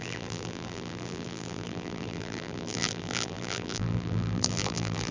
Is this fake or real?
fake